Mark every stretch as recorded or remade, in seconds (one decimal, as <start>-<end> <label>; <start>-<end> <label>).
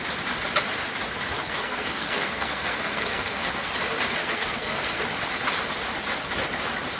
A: 0.0-1.4 recorded; 1.4-3.7 remade; 3.7-4.2 recorded; 4.2-5.0 remade; 5.0-7.0 recorded